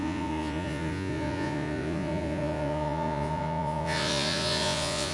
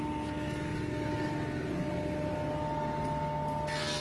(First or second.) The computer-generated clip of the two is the first